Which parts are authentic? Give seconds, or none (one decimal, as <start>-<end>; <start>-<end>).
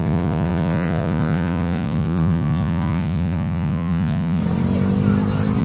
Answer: 4.4-5.6